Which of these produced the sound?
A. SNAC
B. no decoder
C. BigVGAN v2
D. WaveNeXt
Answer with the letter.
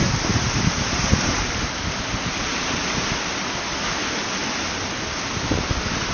B